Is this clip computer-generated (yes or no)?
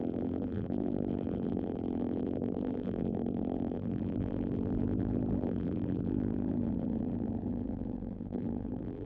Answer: yes